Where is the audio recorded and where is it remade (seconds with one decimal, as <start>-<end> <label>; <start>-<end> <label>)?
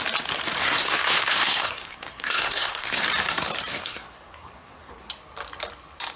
0.0-0.6 recorded; 0.6-3.0 remade; 3.0-3.7 recorded; 3.7-5.1 remade; 5.1-6.2 recorded